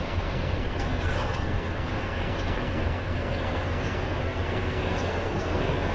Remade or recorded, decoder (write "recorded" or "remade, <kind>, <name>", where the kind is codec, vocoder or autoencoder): remade, codec, SNAC